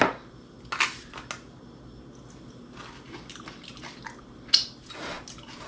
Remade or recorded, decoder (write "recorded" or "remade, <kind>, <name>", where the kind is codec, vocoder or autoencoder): recorded